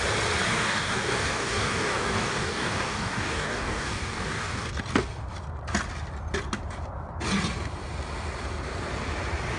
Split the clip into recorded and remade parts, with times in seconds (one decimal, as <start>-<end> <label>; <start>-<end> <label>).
0.0-0.5 recorded; 0.5-4.8 remade; 4.8-9.6 recorded